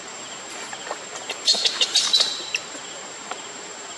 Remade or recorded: remade